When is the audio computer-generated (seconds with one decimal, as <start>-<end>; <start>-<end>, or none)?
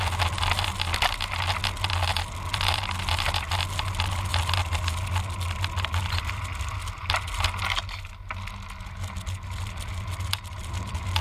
none